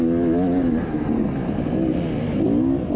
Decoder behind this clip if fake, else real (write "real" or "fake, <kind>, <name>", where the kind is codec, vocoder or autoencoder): real